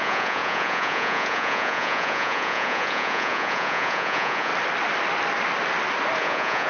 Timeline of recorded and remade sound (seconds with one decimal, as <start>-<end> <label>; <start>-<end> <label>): 0.0-4.5 remade; 4.5-6.2 recorded; 6.2-6.7 remade